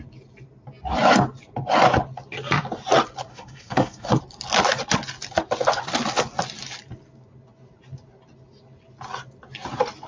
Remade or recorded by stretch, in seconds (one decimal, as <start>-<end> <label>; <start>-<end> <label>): 0.0-3.3 recorded; 3.3-4.2 remade; 4.2-10.1 recorded